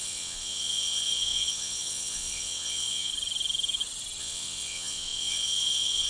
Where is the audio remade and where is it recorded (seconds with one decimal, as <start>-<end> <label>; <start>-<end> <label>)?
0.0-3.1 remade; 3.1-4.2 recorded; 4.2-6.1 remade